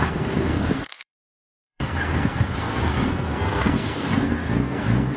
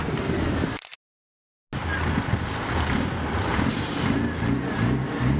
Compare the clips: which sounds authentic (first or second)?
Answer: second